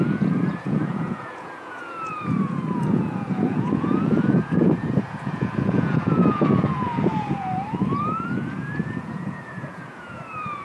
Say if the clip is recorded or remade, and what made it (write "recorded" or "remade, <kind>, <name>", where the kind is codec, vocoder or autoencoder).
remade, vocoder, Vocos